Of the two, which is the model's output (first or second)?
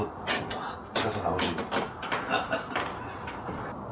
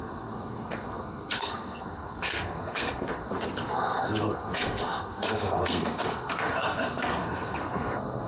second